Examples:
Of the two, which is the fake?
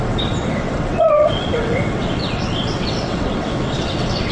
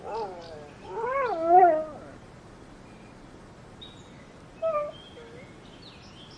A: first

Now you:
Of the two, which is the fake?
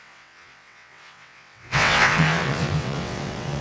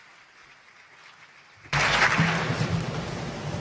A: first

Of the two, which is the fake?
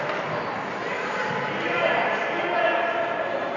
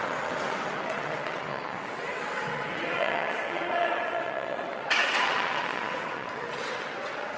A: second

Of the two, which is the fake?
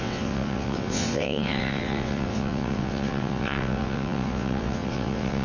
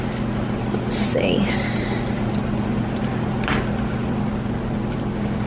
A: first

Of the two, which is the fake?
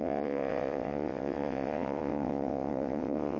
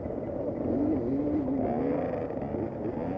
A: first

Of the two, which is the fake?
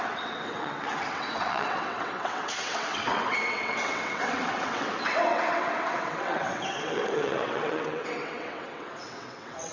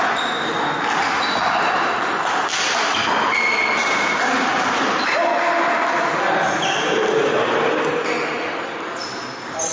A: first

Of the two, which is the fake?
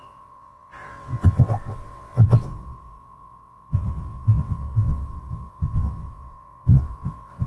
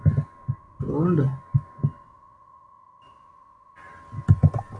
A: first